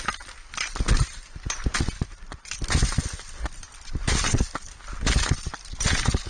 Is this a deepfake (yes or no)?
no